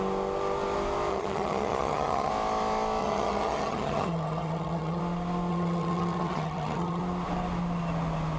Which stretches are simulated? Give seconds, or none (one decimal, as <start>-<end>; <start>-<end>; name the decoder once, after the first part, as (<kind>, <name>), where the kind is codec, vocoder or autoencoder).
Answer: 1.1-2.3 (vocoder, HiFi-GAN); 3.0-5.0; 5.5-7.0